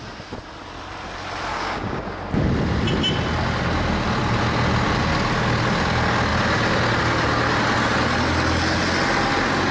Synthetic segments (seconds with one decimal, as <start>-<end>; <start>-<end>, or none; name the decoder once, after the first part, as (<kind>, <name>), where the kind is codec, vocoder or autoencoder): 1.5-2.0 (codec, DAC)